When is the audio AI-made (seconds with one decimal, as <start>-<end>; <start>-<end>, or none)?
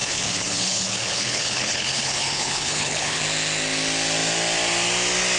0.0-3.2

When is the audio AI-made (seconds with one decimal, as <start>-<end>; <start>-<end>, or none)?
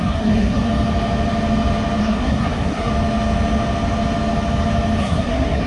0.0-0.7; 2.0-2.9; 5.0-5.7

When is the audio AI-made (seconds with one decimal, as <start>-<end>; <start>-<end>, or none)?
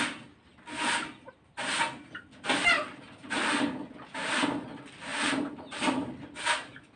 2.6-3.4; 5.1-6.0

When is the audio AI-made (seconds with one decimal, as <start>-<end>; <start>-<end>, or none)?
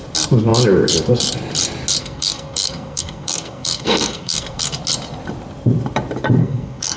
2.0-4.8; 6.4-7.0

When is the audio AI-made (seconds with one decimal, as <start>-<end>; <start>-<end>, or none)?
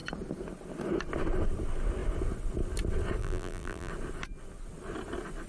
3.2-3.9